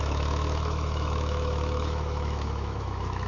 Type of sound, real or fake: fake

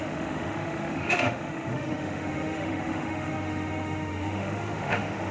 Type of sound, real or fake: fake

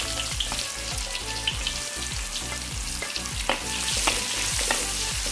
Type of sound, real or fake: real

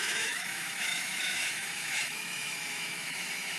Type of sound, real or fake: fake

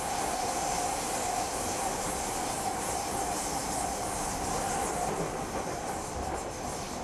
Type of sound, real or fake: real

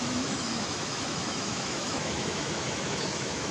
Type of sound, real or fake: fake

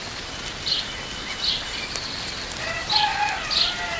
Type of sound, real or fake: real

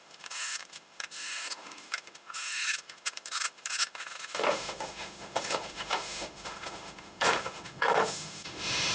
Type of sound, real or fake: fake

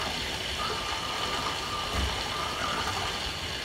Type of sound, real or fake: real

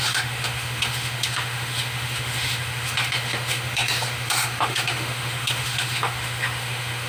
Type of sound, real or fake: fake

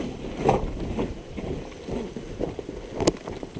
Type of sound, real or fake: real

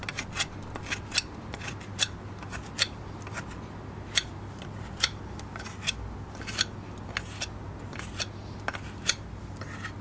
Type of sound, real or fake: real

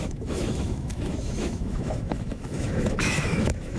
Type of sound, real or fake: fake